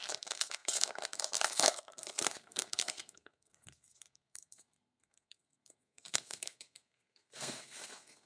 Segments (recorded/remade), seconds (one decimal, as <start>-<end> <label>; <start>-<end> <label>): 0.0-8.2 remade